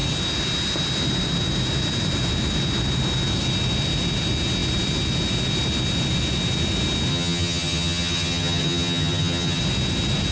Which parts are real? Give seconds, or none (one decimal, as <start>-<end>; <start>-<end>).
0.0-7.1; 9.6-10.3

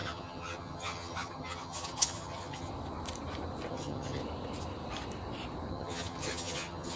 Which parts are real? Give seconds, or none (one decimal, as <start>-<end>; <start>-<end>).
2.7-3.7; 4.2-5.7

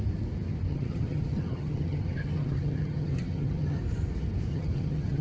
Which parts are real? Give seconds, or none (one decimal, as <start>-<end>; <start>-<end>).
0.0-0.7; 3.8-4.5